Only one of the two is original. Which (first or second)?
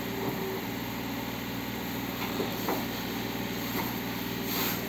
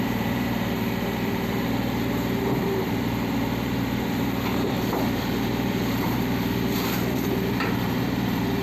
first